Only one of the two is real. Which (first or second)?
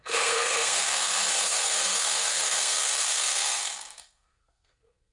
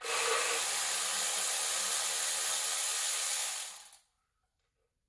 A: second